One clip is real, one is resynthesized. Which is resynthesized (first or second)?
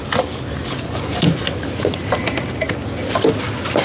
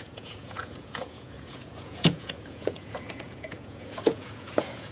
second